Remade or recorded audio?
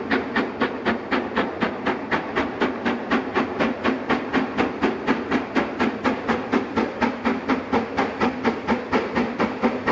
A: recorded